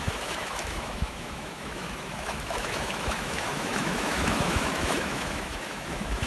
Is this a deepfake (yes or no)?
yes